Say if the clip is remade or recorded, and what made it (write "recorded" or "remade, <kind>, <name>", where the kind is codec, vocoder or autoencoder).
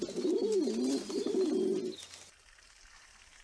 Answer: recorded